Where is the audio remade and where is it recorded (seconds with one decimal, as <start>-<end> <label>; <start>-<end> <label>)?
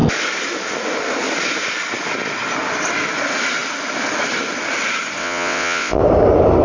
0.0-5.2 recorded; 5.2-6.0 remade; 6.0-6.6 recorded